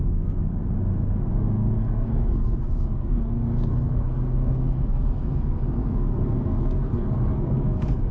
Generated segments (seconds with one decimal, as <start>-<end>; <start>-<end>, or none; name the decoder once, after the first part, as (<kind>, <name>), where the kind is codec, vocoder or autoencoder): 0.0-0.6 (codec, SNAC); 1.3-8.1